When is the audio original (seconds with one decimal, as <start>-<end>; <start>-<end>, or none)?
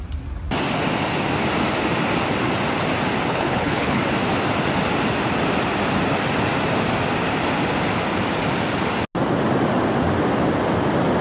0.0-3.3; 4.0-11.2